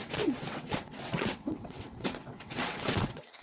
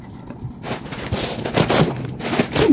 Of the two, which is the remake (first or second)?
first